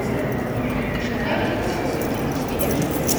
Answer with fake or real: real